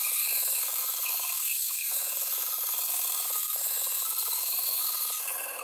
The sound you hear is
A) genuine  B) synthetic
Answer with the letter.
B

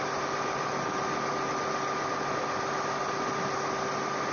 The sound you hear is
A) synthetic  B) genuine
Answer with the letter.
B